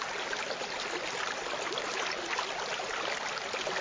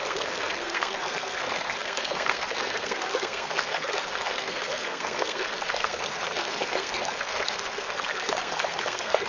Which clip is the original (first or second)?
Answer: first